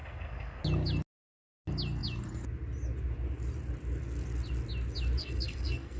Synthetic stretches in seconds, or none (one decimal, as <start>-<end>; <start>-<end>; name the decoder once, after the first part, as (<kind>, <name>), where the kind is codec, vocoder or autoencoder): 0.0-0.6 (codec, SNAC); 5.2-6.0